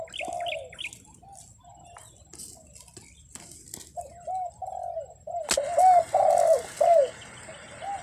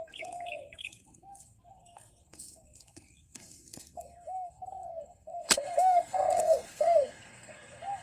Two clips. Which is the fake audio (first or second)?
second